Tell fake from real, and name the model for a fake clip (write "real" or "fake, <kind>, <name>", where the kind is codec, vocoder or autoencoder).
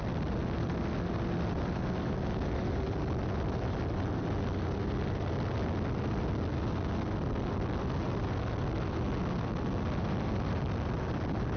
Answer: real